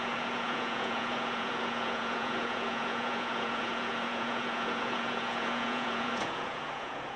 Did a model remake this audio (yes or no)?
yes